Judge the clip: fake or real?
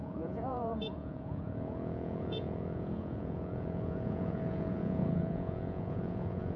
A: fake